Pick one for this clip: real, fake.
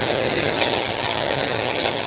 fake